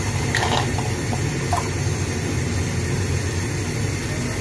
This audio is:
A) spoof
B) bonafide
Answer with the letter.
B